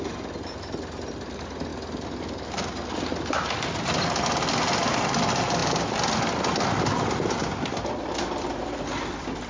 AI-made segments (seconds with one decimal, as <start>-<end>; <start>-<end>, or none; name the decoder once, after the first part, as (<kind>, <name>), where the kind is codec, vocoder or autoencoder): none